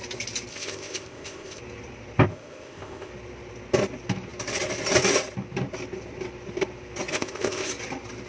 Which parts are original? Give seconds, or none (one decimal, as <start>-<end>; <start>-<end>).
0.0-0.5; 1.6-2.3; 3.1-7.1; 7.7-8.3